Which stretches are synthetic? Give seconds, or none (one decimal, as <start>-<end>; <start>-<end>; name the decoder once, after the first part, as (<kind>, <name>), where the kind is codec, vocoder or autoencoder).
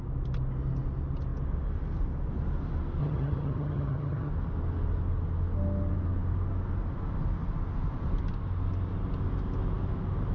3.0-4.3 (vocoder, HiFi-GAN)